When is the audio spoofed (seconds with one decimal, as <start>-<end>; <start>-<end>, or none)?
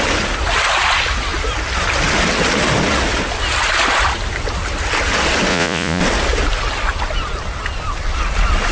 5.5-6.0